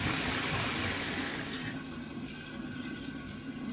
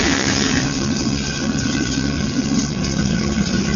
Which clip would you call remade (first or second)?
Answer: second